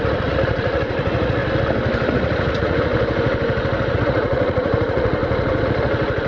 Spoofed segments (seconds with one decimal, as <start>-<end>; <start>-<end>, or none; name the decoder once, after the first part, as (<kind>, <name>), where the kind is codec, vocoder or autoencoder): 0.0-1.4 (vocoder, Vocos); 2.1-2.9; 3.9-5.2